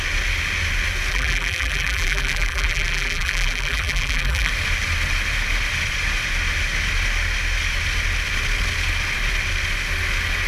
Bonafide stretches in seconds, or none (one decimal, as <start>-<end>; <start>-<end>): 0.0-1.1; 4.5-10.5